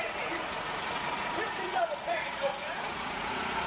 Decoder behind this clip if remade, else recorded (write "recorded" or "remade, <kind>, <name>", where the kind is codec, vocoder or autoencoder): remade, vocoder, Vocos